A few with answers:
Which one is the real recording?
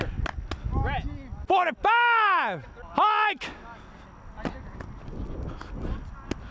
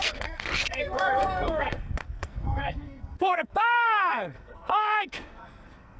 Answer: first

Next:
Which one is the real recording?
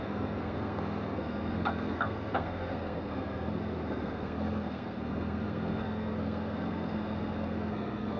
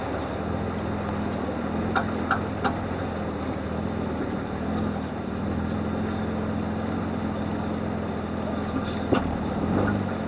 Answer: second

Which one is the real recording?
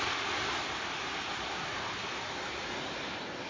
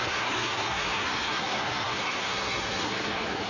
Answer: first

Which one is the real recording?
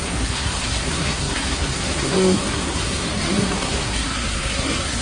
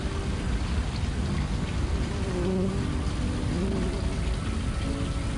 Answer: second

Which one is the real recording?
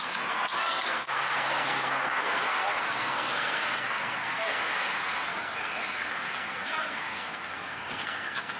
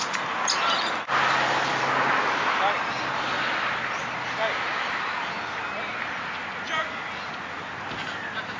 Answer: second